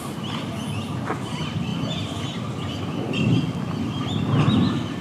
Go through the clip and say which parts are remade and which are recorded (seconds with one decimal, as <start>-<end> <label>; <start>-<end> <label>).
0.0-5.0 recorded